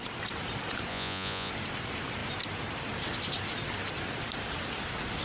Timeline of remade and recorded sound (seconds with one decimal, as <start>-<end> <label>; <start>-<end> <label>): 0.0-0.9 recorded; 0.9-1.5 remade; 1.5-5.2 recorded